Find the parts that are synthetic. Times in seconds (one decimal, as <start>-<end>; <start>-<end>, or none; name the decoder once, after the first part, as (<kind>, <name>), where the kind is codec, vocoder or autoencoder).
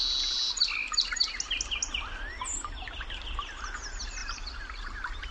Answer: 4.2-5.3 (vocoder, BigVGAN v2)